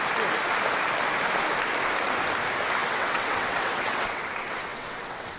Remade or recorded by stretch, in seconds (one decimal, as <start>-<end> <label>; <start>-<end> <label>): 0.0-2.8 recorded; 2.8-4.3 remade; 4.3-4.7 recorded; 4.7-5.4 remade

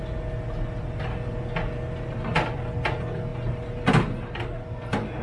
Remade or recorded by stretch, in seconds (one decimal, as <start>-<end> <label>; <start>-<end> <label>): 0.0-5.2 recorded

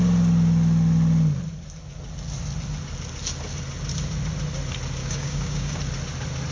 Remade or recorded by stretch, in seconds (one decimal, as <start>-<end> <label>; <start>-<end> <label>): 0.0-5.0 recorded; 5.0-5.8 remade; 5.8-6.5 recorded

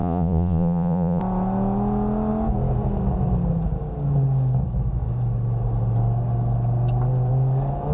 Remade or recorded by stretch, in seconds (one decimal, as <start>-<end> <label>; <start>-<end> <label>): 0.0-1.2 remade; 1.2-7.9 recorded

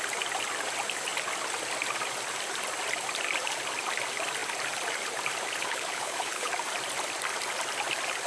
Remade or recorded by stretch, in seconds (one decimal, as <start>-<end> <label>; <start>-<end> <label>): 0.0-5.6 recorded; 5.6-6.5 remade; 6.5-8.3 recorded

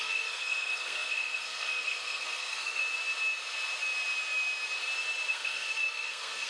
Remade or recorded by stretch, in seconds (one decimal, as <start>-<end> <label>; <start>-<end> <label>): 0.0-2.8 remade; 2.8-5.3 recorded; 5.3-6.5 remade